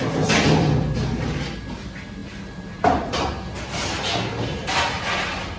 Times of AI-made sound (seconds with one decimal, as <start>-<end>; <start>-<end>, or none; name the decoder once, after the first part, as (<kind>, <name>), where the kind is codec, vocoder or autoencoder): none